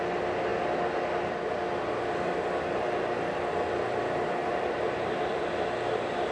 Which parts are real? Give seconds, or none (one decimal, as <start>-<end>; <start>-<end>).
0.0-4.4; 5.5-6.3